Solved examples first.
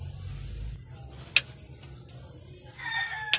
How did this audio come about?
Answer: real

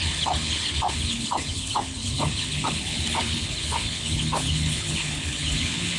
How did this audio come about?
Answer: fake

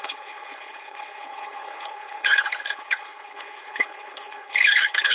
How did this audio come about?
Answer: fake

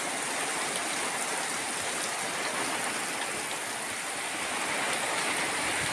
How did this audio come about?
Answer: real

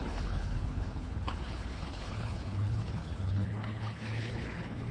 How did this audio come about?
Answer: fake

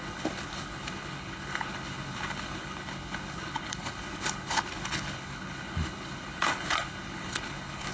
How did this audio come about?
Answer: fake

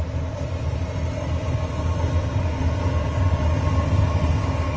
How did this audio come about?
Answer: real